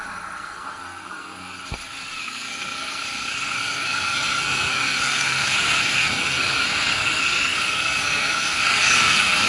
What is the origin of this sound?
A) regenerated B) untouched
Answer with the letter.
A